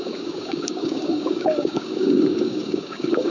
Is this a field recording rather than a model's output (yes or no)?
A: no